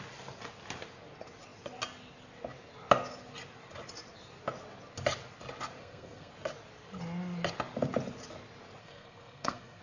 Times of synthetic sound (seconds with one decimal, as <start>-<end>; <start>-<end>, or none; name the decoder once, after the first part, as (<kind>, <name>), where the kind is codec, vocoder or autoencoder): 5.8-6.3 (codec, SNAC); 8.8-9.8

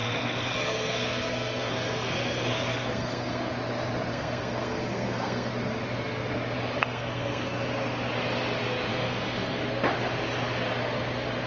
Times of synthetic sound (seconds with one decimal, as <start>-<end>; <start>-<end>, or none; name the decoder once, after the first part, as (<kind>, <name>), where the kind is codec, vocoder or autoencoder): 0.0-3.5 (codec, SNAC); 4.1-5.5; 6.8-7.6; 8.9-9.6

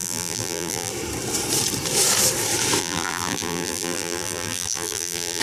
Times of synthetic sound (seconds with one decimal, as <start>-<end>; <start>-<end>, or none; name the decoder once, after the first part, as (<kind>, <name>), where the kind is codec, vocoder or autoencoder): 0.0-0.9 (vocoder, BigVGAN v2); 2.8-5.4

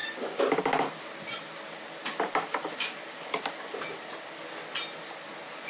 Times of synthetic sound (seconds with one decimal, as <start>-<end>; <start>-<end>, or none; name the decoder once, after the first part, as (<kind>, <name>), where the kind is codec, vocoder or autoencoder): none

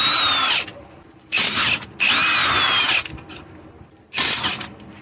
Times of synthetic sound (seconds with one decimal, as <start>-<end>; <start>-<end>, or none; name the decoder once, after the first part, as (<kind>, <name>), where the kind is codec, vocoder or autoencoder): none

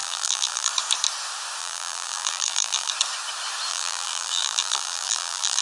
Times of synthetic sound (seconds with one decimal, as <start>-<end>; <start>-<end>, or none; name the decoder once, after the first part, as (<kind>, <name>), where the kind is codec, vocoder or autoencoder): 0.0-0.7 (vocoder, BigVGAN v2); 1.6-2.9; 3.7-5.6

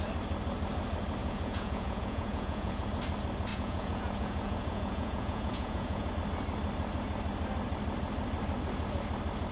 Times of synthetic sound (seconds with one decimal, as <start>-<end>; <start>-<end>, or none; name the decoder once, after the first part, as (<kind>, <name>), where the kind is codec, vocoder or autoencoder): 1.2-2.8 (vocoder, Vocos); 3.5-6.1